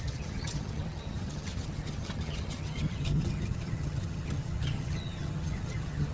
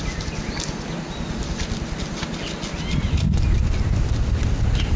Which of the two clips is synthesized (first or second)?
first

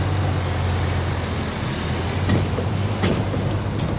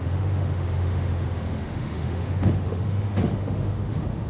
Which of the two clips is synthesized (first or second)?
second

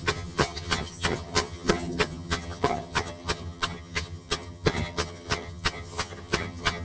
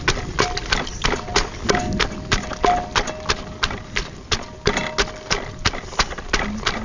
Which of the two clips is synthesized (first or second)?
first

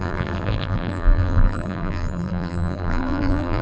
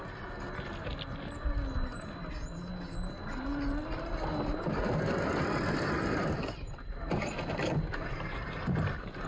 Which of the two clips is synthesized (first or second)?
first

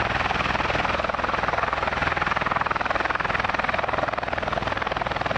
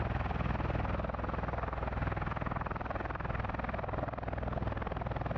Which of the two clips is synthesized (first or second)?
first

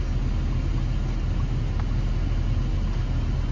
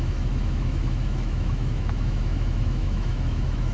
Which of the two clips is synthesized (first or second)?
second